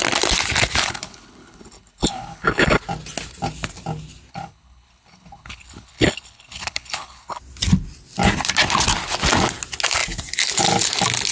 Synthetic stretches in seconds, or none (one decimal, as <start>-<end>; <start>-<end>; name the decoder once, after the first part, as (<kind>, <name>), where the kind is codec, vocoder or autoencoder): 0.8-2.8 (codec, HILCodec); 4.3-7.4